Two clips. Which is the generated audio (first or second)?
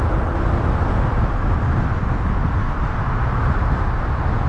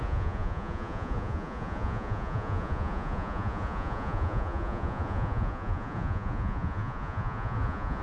second